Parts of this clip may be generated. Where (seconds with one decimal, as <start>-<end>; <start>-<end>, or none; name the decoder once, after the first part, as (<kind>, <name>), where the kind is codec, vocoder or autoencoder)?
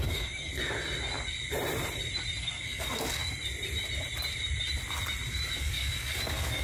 0.0-0.5 (codec, DAC); 2.4-3.2; 5.6-6.6